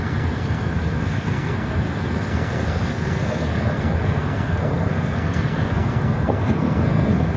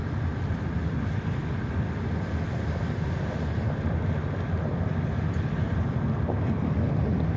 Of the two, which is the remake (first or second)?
first